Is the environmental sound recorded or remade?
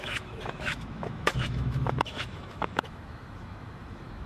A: remade